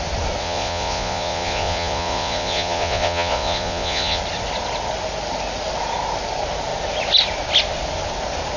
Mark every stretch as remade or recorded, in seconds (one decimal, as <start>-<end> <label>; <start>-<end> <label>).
0.0-0.4 recorded; 0.4-4.2 remade; 4.2-8.6 recorded